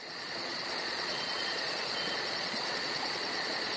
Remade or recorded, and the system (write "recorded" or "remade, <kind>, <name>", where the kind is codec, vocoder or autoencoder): remade, vocoder, Vocos